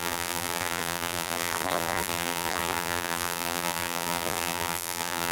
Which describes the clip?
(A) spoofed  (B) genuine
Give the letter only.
A